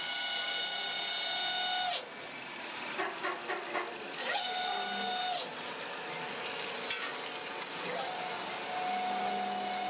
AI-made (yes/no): no